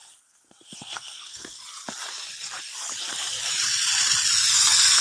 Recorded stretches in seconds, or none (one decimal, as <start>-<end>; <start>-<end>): 1.6-4.6